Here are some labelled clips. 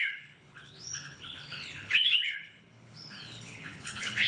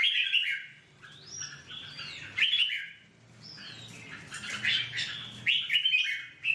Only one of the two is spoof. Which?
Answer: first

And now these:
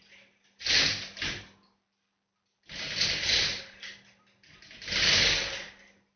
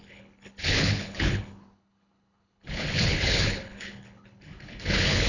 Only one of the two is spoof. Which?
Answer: second